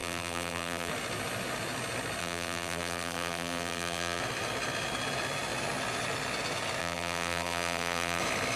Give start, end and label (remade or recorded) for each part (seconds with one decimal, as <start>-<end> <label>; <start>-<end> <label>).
0.0-0.9 remade; 0.9-2.2 recorded; 2.2-4.2 remade; 4.2-6.8 recorded; 6.8-8.2 remade; 8.2-8.6 recorded

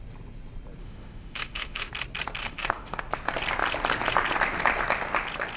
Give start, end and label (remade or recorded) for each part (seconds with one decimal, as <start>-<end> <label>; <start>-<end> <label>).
0.0-0.8 recorded; 0.8-1.9 remade; 1.9-2.4 recorded; 2.4-3.0 remade; 3.0-5.6 recorded

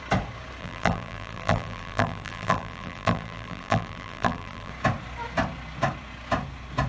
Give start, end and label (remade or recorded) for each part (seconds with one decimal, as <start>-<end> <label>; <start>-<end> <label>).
0.0-0.6 recorded; 0.6-4.7 remade; 4.7-6.9 recorded

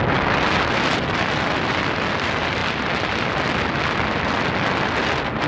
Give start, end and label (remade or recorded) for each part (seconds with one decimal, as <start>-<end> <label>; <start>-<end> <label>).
0.0-5.5 recorded

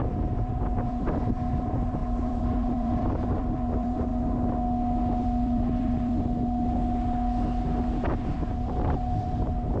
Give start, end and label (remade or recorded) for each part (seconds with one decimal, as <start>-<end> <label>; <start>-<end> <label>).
0.0-4.1 remade; 4.1-5.2 recorded; 5.2-6.1 remade; 6.1-8.2 recorded; 8.2-9.8 remade

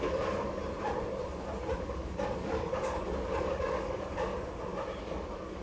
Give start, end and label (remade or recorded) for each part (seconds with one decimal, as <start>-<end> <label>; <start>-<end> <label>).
0.0-0.6 remade; 0.6-1.8 recorded; 1.8-4.3 remade; 4.3-5.0 recorded; 5.0-5.6 remade

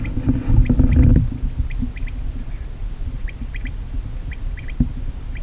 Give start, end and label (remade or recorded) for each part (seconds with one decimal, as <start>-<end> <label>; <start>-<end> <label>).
0.0-3.2 recorded; 3.2-4.0 remade; 4.0-5.4 recorded

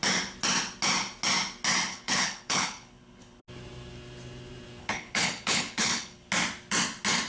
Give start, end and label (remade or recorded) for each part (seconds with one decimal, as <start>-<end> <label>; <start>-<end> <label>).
0.0-1.9 recorded; 1.9-3.4 remade; 3.4-4.8 recorded; 4.8-6.3 remade; 6.3-7.3 recorded